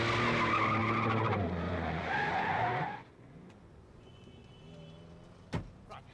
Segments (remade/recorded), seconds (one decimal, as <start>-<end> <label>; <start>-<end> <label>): 0.0-0.8 recorded; 0.8-4.5 remade; 4.5-6.1 recorded